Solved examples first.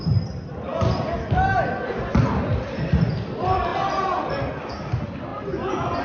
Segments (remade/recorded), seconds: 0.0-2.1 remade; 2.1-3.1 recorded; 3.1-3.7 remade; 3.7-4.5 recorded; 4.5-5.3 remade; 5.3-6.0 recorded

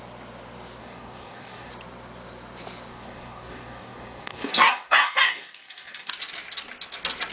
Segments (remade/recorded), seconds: 0.0-0.8 recorded; 0.8-1.7 remade; 1.7-2.9 recorded; 2.9-6.1 remade; 6.1-7.3 recorded

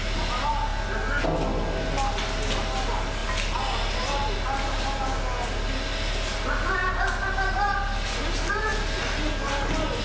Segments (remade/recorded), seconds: 0.0-10.0 recorded

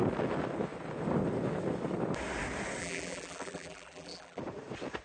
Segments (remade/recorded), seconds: 0.0-2.8 recorded; 2.8-4.4 remade; 4.4-5.0 recorded